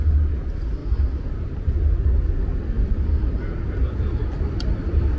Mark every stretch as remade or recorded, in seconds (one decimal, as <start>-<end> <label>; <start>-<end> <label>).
0.0-5.2 recorded